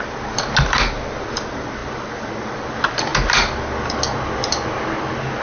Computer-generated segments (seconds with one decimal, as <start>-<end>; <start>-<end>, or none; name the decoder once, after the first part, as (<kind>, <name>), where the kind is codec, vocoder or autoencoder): none